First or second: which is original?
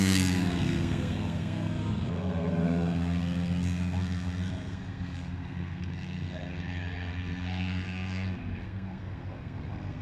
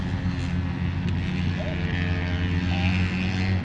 second